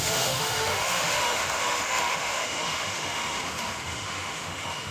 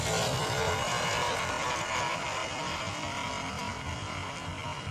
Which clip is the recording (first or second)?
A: second